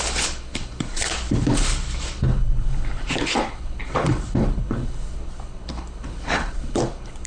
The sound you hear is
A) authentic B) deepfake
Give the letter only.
B